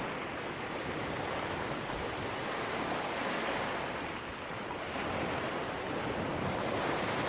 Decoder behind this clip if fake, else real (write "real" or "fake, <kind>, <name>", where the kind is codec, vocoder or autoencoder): real